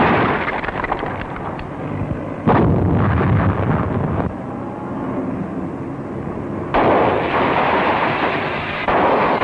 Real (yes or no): yes